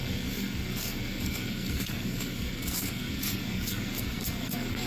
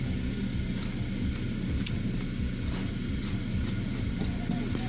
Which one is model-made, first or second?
first